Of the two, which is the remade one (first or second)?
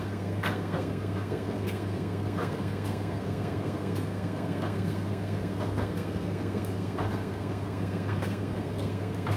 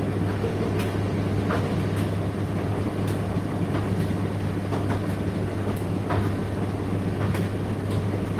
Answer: first